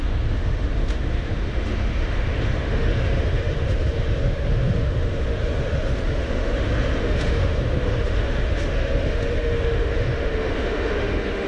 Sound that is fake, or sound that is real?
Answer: fake